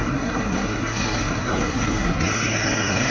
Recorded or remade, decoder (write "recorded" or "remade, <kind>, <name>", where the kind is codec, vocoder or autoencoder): remade, codec, SNAC